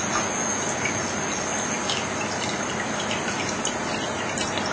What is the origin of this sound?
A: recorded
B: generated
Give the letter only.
A